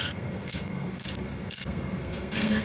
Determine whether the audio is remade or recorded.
remade